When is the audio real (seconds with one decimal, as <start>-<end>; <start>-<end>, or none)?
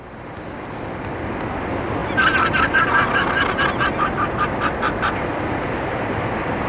0.0-6.7